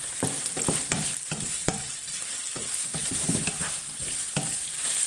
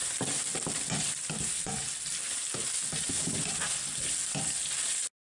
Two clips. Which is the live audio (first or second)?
second